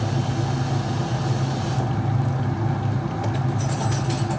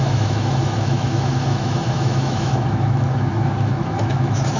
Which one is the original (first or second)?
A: first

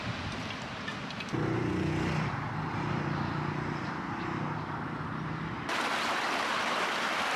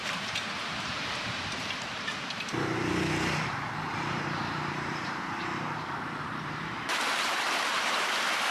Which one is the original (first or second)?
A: first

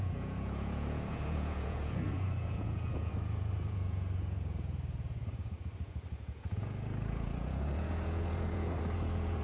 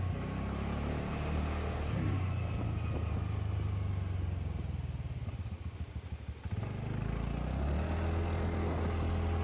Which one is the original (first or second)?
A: second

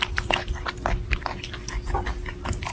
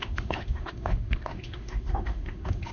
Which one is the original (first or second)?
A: first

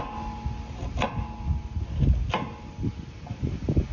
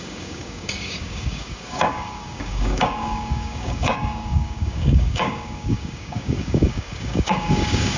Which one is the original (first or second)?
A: first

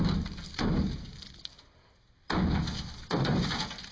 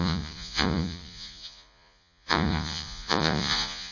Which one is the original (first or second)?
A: first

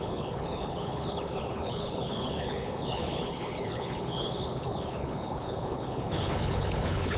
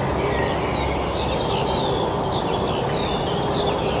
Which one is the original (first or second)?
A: second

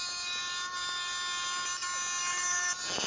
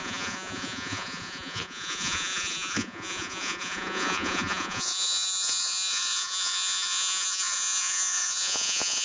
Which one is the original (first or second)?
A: first